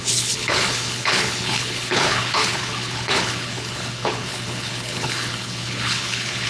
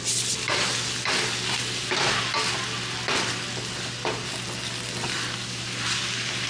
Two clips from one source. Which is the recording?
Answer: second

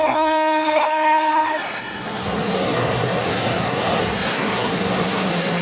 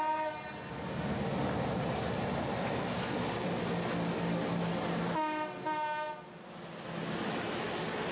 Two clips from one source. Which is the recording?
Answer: second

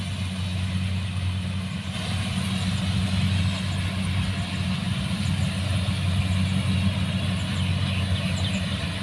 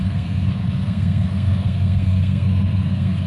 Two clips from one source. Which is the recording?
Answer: first